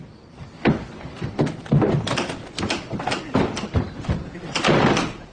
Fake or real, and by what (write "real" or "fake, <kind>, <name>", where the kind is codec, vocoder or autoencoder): real